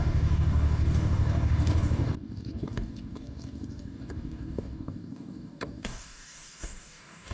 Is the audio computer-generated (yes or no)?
yes